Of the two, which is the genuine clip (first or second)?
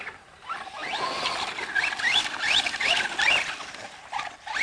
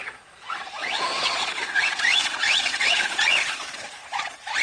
first